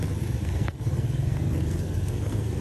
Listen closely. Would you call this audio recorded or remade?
remade